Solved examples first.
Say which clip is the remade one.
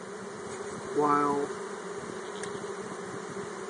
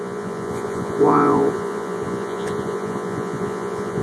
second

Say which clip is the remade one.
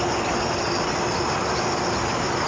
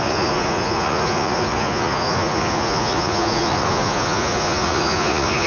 second